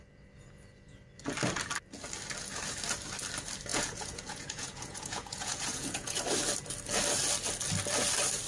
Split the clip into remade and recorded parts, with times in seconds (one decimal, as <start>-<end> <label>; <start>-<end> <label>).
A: 0.0-3.7 recorded; 3.7-6.2 remade; 6.2-8.5 recorded